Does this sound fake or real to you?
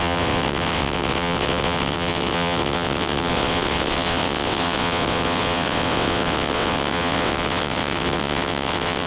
fake